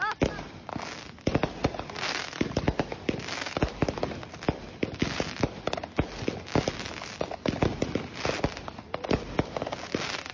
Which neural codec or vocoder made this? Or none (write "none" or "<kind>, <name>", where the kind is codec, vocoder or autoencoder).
none